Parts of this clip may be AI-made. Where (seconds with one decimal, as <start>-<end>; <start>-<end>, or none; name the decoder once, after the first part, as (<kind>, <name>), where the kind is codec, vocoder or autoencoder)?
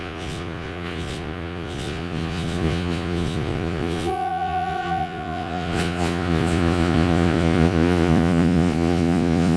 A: 0.0-9.6 (vocoder, Vocos)